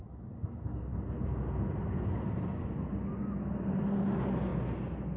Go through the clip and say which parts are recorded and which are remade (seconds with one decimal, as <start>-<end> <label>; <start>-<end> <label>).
0.0-5.2 recorded